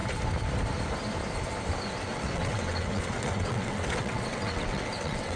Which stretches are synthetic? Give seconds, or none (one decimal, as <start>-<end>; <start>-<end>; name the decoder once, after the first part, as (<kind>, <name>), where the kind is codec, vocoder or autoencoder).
2.1-5.4 (vocoder, WaveNeXt)